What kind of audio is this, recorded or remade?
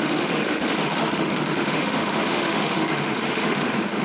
remade